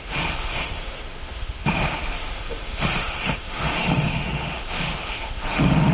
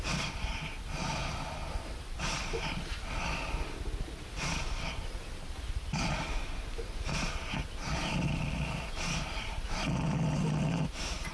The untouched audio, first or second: second